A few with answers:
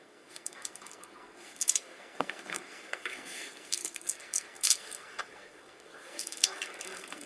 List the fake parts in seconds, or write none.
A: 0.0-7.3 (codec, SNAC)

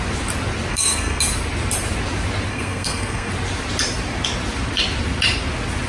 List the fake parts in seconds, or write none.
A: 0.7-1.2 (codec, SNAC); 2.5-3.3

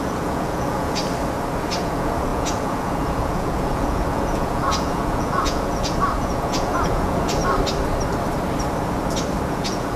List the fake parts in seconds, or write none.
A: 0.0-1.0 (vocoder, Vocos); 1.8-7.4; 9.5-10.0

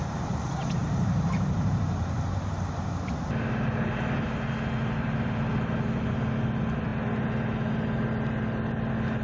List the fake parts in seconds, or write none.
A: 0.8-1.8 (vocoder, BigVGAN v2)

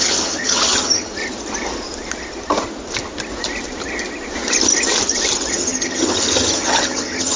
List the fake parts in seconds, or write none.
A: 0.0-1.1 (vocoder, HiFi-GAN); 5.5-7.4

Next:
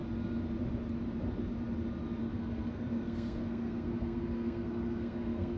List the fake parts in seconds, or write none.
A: 2.2-5.6 (codec, SNAC)